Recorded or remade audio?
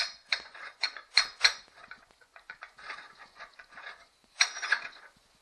remade